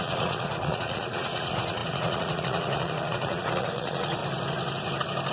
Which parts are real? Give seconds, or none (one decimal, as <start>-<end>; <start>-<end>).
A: 4.2-5.3